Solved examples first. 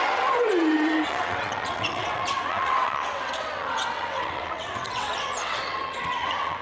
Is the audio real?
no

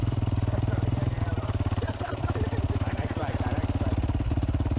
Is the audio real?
no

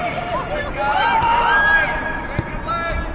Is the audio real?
yes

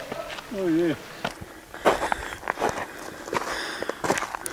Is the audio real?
yes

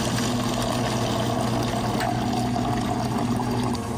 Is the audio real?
yes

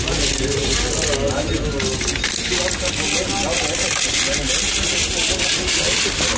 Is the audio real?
yes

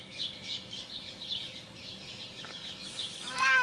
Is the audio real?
no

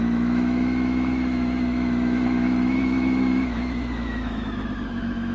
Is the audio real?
no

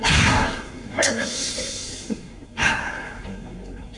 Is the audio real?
no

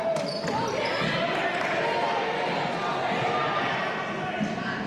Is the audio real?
yes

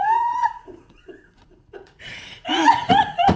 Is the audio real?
no